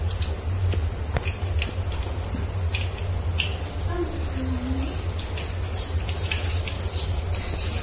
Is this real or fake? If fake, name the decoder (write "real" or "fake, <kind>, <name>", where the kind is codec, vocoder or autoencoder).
real